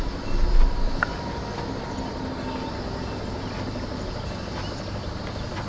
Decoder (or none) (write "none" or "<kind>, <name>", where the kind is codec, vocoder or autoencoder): none